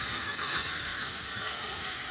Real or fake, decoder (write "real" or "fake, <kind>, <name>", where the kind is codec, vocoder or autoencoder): fake, codec, SNAC